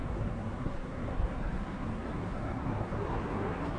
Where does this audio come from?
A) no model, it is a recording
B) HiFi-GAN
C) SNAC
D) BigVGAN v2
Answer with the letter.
C